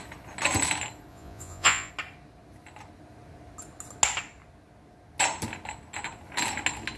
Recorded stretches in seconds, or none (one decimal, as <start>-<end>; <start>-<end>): 0.0-1.1; 1.9-7.0

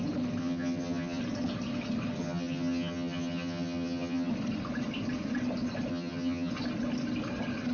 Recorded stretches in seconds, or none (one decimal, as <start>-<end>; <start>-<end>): 0.0-0.4; 1.2-2.2; 4.3-5.9; 6.5-7.7

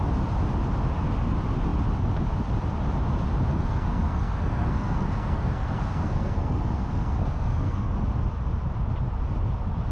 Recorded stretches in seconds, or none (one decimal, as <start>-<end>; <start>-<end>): 0.0-3.5; 7.9-9.9

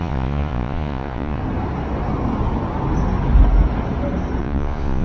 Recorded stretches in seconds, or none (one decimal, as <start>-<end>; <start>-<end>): 1.4-4.4

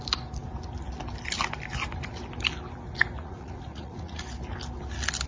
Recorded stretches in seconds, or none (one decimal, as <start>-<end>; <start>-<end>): 0.0-3.2; 4.2-5.3

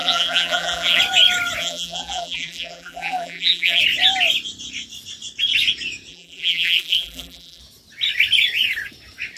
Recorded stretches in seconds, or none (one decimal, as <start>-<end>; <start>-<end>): 1.0-1.6; 3.8-6.1; 7.6-9.4

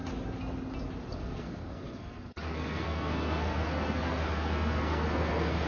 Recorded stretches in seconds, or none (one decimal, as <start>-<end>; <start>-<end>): 0.0-1.1